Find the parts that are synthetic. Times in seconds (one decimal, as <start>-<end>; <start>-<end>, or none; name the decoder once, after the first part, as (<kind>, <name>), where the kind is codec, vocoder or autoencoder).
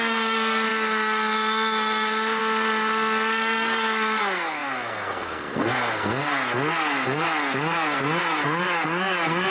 0.0-9.5 (codec, SNAC)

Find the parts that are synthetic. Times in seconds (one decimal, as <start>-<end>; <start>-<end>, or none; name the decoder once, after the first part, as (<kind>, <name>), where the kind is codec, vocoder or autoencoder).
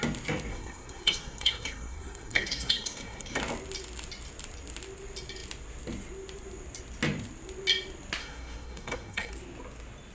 0.5-3.4 (codec, SNAC); 8.2-9.3